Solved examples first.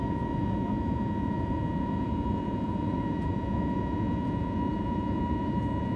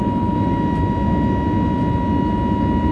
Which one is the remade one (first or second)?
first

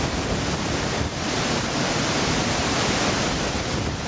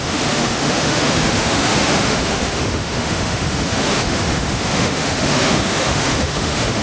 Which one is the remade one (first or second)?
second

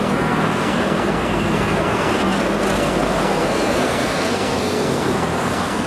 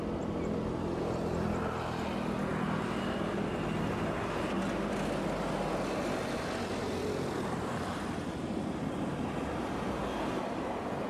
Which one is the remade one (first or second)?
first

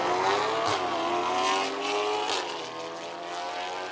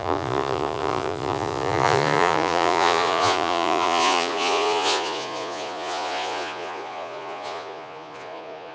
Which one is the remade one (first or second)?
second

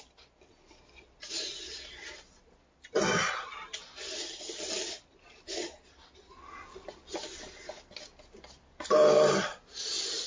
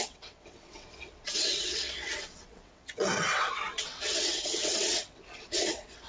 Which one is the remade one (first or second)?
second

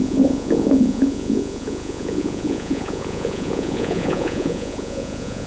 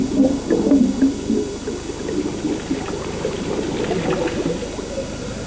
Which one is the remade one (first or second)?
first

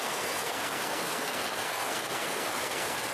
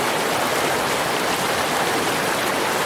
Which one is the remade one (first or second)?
first